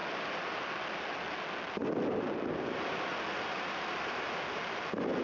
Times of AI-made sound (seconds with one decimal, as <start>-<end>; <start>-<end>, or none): none